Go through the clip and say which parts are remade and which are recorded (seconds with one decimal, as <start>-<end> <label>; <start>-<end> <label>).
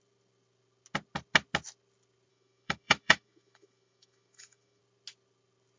0.0-2.3 recorded; 2.3-4.8 remade; 4.8-5.8 recorded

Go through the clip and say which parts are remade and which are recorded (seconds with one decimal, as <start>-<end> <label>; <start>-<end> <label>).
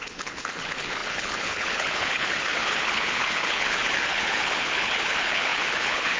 0.0-6.2 remade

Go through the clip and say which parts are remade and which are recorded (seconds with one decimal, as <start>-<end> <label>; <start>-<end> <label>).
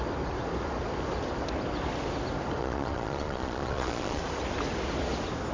0.0-2.6 recorded; 2.6-4.2 remade; 4.2-5.5 recorded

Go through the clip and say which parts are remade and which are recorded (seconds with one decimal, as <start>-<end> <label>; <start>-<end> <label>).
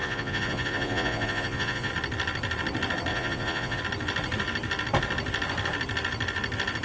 0.0-1.9 remade; 1.9-3.1 recorded; 3.1-3.8 remade; 3.8-6.8 recorded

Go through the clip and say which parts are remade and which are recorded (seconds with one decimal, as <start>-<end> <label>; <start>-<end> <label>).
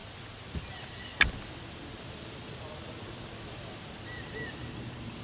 0.0-0.7 recorded; 0.7-1.1 remade; 1.1-4.2 recorded; 4.2-5.2 remade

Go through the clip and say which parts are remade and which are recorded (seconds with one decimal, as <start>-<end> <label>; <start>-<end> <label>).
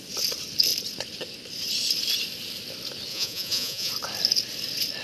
0.0-3.1 recorded; 3.1-3.9 remade; 3.9-5.0 recorded